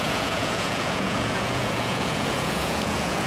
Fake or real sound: fake